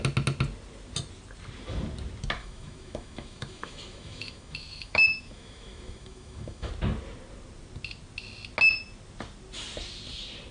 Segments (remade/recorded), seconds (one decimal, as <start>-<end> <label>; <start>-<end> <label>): 0.0-2.4 recorded; 2.4-6.7 remade; 6.7-10.5 recorded